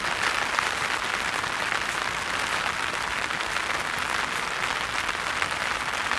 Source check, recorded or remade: recorded